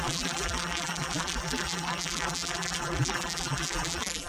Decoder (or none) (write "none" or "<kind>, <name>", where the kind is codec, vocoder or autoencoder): vocoder, BigVGAN v2